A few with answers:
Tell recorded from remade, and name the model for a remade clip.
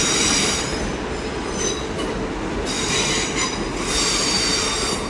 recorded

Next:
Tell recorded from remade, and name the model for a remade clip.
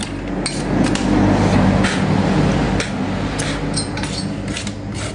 recorded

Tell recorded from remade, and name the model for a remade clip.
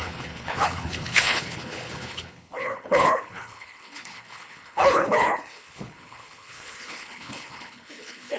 remade, codec, HILCodec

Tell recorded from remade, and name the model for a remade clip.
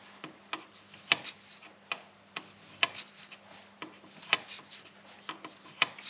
recorded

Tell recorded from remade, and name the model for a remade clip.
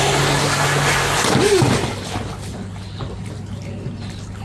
recorded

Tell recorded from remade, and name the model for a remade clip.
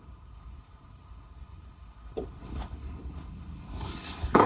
remade, codec, HILCodec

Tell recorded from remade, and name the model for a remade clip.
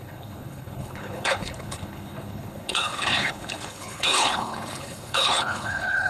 remade, codec, HILCodec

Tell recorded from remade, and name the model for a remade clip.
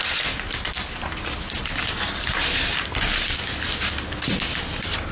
recorded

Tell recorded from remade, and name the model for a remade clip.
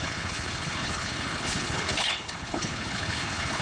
remade, codec, HILCodec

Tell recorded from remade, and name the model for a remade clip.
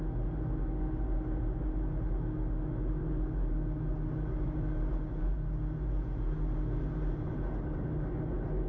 recorded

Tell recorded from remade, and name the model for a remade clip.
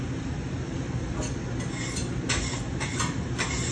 recorded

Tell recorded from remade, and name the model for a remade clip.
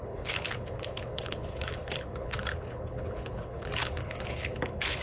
remade, codec, HILCodec